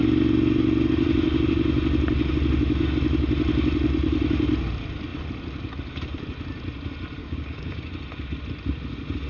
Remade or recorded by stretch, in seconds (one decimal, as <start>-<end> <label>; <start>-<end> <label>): 0.0-7.2 recorded; 7.2-7.9 remade; 7.9-9.3 recorded